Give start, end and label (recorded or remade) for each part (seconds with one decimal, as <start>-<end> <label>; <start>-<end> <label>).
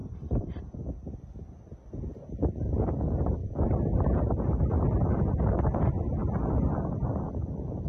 0.0-0.6 remade; 0.6-3.4 recorded; 3.4-4.4 remade; 4.4-7.9 recorded